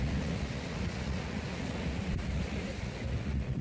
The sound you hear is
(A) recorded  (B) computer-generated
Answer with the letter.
B